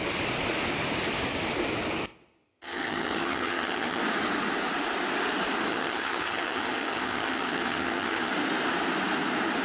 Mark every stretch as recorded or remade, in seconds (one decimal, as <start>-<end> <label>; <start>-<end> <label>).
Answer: 0.0-2.5 recorded; 2.5-4.0 remade; 4.0-5.7 recorded; 5.7-8.3 remade; 8.3-9.6 recorded